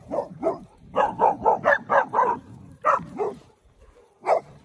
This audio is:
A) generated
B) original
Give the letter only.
A